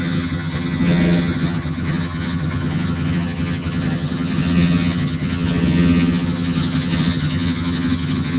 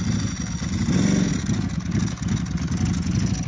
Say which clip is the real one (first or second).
second